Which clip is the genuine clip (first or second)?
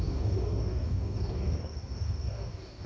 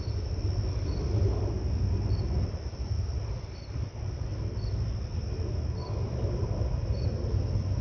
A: second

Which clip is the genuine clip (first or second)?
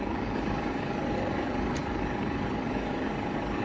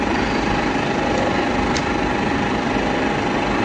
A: second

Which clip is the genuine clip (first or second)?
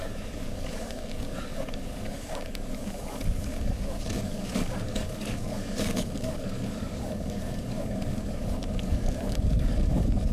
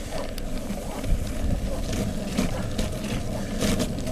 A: second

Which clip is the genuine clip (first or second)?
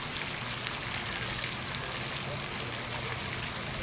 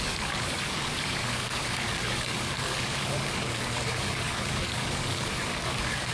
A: first